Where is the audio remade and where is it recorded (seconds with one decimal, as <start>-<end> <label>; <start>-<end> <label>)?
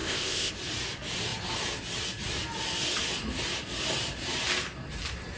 0.0-0.5 remade; 0.5-5.4 recorded